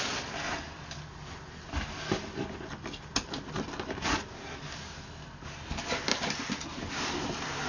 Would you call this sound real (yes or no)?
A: yes